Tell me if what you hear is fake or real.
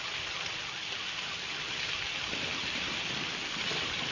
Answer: real